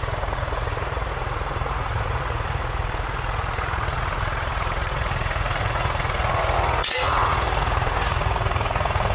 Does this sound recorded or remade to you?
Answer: remade